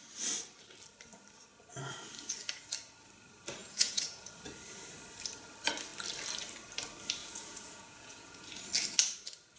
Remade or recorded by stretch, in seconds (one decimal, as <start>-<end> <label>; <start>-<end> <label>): 0.0-3.6 recorded; 3.6-4.3 remade; 4.3-7.2 recorded; 7.2-8.5 remade; 8.5-9.6 recorded